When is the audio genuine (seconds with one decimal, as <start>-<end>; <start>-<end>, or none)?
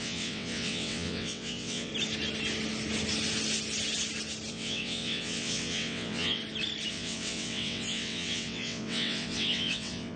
1.9-4.5; 6.4-6.9